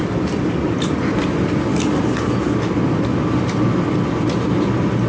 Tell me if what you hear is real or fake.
fake